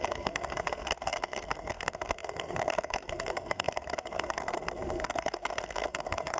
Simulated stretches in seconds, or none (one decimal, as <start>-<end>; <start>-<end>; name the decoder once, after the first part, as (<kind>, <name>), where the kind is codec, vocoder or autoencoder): 0.0-6.4 (codec, SNAC)